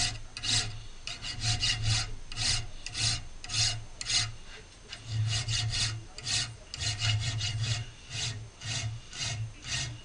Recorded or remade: recorded